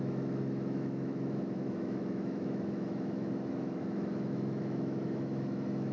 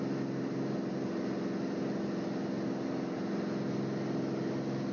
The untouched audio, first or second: second